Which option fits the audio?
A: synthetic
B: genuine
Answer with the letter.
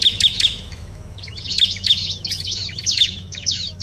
A